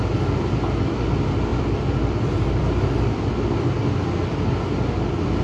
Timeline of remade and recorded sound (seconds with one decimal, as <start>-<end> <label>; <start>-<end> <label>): 0.0-1.5 recorded; 1.5-3.3 remade; 3.3-5.4 recorded